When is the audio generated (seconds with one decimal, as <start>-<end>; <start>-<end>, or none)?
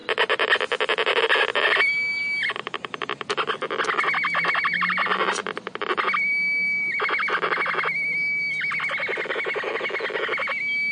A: none